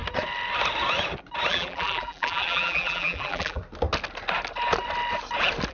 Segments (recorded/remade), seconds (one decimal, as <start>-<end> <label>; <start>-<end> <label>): 0.0-1.5 recorded; 1.5-3.6 remade; 3.6-5.7 recorded